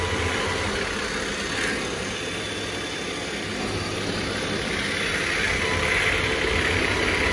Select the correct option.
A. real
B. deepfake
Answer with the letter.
A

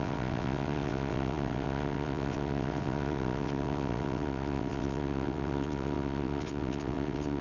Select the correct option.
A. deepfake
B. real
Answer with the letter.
A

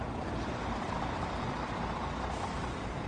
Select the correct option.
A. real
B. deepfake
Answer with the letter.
A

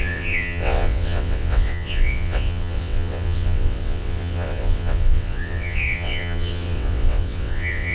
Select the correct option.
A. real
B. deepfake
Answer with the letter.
B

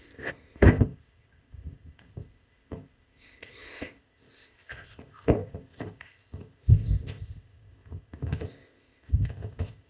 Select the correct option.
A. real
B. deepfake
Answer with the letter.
B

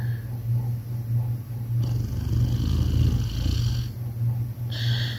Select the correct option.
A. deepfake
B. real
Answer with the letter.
B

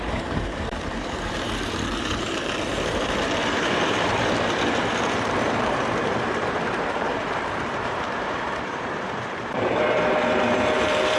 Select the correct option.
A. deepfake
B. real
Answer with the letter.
A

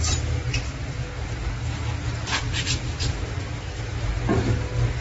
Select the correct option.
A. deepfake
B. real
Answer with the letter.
B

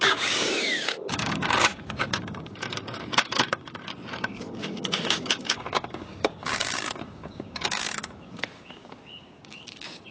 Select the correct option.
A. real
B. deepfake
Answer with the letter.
B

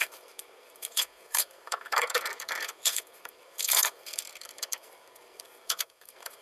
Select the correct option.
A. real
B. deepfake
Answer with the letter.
B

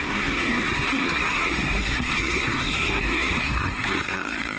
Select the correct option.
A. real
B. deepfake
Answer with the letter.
B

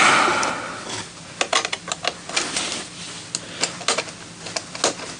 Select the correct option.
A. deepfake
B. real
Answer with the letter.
B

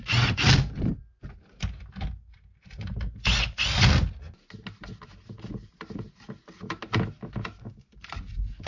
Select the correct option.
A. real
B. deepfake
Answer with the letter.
A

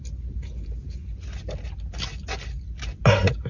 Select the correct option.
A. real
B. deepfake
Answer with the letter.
A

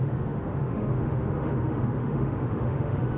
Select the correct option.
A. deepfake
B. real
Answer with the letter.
A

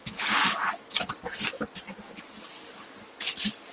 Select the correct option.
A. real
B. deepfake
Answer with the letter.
B